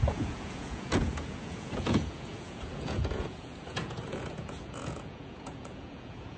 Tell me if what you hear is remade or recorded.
remade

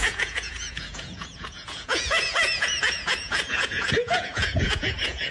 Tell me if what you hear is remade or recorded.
remade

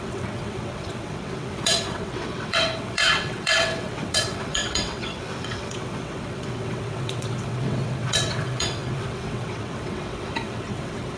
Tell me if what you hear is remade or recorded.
remade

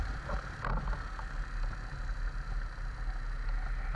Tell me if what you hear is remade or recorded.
recorded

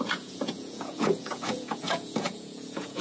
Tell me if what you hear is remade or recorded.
remade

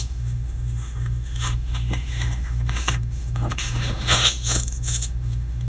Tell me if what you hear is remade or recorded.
remade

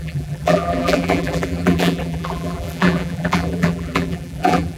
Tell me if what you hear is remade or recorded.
remade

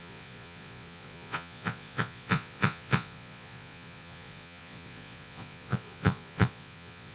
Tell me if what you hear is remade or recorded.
remade